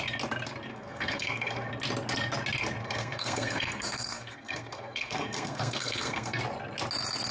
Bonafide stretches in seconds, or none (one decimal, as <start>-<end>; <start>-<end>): 0.0-0.7; 1.7-2.8; 6.4-7.3